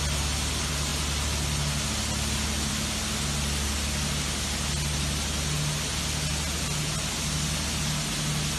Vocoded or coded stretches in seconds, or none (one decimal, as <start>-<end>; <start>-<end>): none